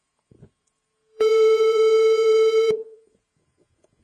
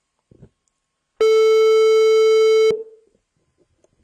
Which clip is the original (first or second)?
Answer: second